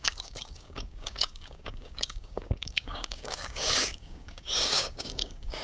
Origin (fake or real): fake